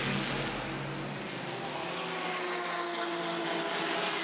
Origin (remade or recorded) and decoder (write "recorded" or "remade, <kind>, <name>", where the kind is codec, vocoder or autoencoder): recorded